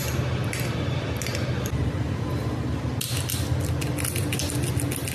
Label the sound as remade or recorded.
recorded